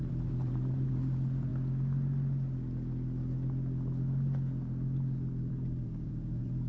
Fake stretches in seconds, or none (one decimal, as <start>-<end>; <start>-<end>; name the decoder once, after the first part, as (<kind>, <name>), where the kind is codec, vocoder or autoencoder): 0.0-1.5 (vocoder, BigVGAN v2); 5.5-6.7